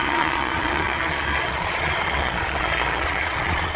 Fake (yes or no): yes